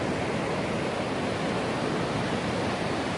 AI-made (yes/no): no